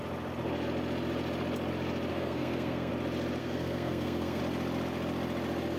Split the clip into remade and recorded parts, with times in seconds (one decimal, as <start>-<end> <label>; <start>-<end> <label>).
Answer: 0.0-2.1 recorded; 2.1-2.9 remade; 2.9-3.4 recorded; 3.4-4.4 remade; 4.4-5.8 recorded